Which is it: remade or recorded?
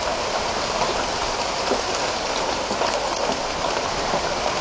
remade